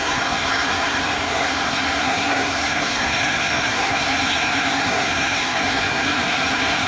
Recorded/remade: remade